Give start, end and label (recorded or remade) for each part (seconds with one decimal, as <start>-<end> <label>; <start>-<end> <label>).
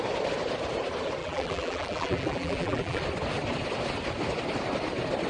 0.0-1.2 recorded; 1.2-3.0 remade; 3.0-5.3 recorded